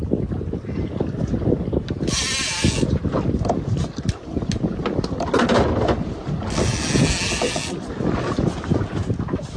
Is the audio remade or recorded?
recorded